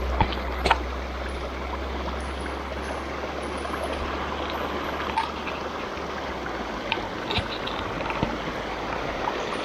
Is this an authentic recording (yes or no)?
yes